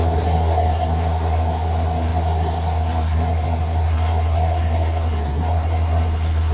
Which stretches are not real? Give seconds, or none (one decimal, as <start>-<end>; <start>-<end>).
0.0-6.5